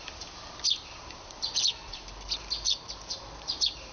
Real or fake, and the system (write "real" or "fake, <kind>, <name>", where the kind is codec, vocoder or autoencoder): fake, vocoder, BigVGAN v2